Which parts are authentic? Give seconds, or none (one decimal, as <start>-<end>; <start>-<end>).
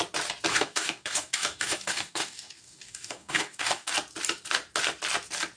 0.0-0.5; 3.9-5.6